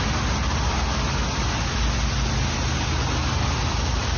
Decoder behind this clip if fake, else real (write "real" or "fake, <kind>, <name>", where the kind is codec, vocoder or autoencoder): real